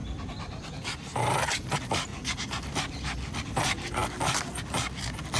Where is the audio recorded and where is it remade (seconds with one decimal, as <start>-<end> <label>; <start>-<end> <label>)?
0.0-2.1 remade; 2.1-2.8 recorded; 2.8-4.0 remade; 4.0-5.4 recorded